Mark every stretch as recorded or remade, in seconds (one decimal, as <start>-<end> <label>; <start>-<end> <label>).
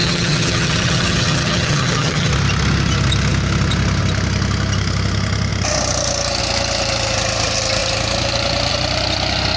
0.0-2.3 remade; 2.3-9.6 recorded